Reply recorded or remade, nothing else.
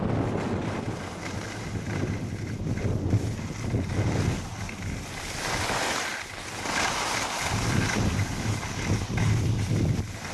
recorded